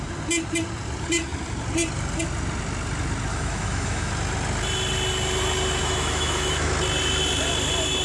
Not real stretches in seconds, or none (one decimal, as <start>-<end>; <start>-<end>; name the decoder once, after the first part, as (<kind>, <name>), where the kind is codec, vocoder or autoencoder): 3.3-4.1 (autoencoder, DAC-VAE); 5.8-6.7